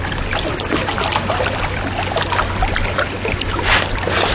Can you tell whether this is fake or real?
real